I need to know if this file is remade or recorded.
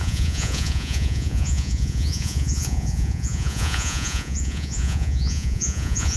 remade